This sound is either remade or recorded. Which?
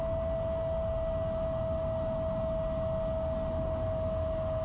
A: recorded